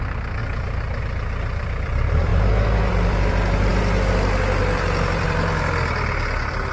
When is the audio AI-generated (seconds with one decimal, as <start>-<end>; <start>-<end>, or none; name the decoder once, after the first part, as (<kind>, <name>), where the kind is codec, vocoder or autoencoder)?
0.0-0.4 (vocoder, BigVGAN v2); 1.0-3.7; 4.6-6.7